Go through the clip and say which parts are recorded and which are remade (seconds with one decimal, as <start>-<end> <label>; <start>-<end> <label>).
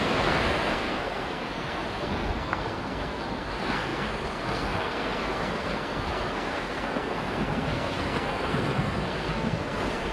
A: 0.0-10.1 remade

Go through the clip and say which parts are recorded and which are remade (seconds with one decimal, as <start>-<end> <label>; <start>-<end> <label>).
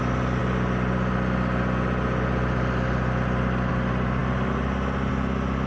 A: 0.0-5.7 recorded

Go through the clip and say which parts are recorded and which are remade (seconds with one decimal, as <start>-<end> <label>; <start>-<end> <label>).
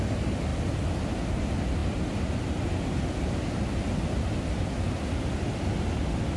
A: 0.0-6.4 recorded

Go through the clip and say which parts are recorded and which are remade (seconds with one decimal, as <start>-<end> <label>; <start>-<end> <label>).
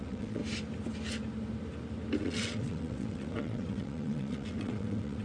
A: 0.0-0.4 remade; 0.4-2.2 recorded; 2.2-5.2 remade